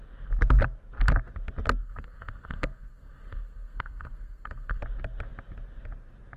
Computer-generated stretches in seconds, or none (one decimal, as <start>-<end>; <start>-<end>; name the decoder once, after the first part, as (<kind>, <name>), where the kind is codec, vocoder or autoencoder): 1.8-4.8 (codec, SNAC)